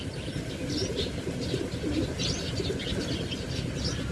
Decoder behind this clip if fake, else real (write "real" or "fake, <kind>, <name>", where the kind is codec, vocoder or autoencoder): real